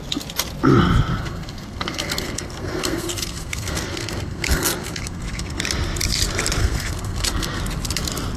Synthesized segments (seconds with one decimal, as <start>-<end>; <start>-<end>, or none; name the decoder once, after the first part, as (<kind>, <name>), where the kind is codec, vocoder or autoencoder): 1.1-5.6 (codec, SNAC); 6.6-7.6